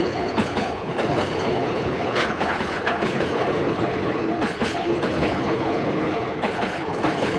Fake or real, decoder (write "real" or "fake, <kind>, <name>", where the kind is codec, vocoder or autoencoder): fake, codec, HILCodec